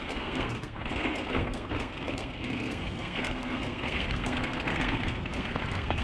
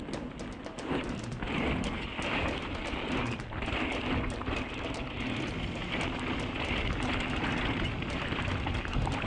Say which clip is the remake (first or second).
first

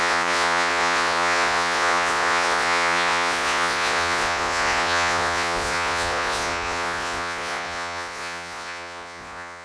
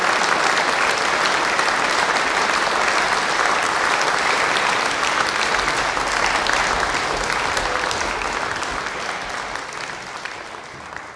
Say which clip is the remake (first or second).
first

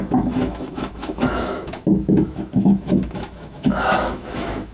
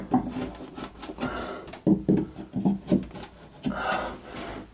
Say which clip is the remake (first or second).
first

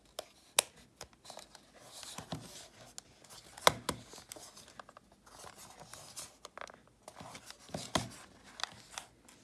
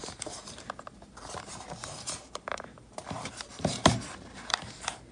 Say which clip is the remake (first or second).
second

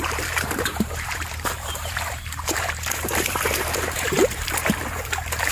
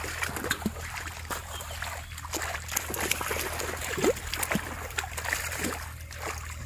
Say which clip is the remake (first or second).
first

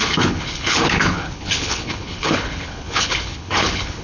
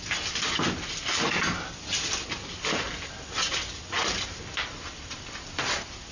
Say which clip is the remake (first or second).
first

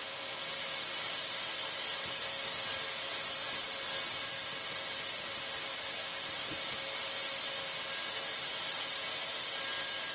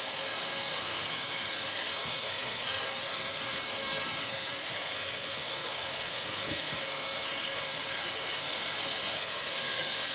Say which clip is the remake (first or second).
second